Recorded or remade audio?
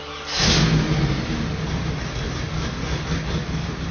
recorded